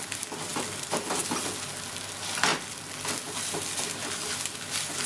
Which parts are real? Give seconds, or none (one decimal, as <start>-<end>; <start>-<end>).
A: 0.0-5.1